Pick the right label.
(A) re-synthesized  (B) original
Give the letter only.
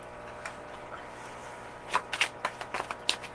B